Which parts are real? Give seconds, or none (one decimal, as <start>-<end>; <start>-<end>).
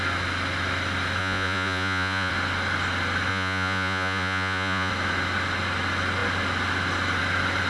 0.0-1.2; 2.3-3.3; 4.9-7.7